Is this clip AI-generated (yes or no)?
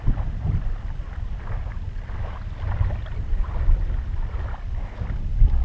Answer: no